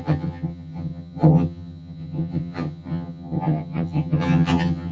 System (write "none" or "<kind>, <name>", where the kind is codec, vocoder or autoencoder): vocoder, HiFi-GAN